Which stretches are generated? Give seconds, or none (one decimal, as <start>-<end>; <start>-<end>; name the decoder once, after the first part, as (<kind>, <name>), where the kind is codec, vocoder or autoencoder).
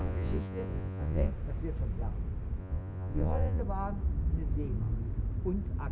0.0-1.3 (vocoder, Vocos); 2.6-3.6